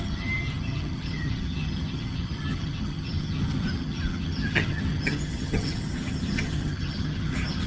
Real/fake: fake